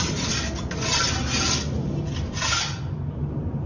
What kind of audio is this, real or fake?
real